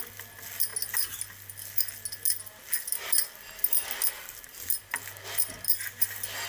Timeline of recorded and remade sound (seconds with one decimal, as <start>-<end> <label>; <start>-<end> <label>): 0.0-6.5 recorded